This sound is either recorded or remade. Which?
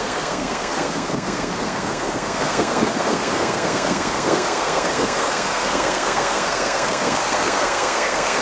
remade